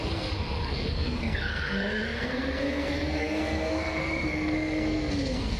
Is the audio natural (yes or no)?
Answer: no